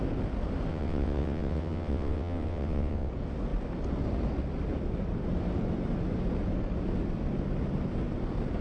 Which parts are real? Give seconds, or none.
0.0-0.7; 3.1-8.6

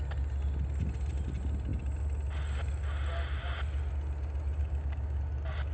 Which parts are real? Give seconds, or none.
0.0-4.6; 5.2-5.7

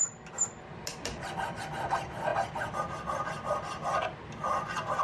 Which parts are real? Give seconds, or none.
0.0-5.0

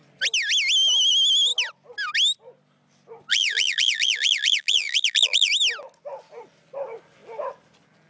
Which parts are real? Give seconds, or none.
0.0-3.3; 5.5-8.1

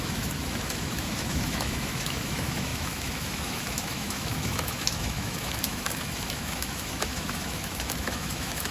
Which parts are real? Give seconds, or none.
none

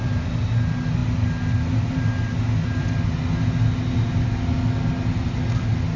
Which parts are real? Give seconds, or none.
0.0-6.0

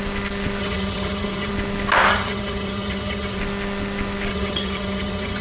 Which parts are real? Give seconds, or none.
0.0-0.6; 1.5-2.1; 3.4-4.3